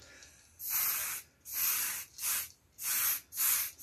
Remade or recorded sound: recorded